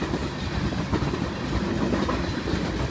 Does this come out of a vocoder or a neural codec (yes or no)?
no